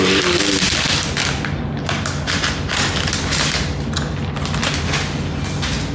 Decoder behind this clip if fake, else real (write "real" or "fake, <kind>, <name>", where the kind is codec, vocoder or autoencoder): real